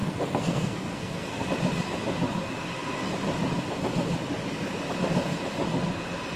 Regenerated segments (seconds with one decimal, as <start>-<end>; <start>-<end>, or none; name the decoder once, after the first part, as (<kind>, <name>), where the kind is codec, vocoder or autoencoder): 0.0-1.5 (codec, SNAC)